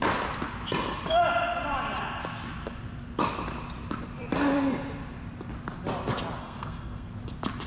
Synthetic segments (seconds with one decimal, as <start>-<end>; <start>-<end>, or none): 6.4-7.1